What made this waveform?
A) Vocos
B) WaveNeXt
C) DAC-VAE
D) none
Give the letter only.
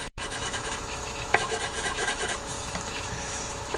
C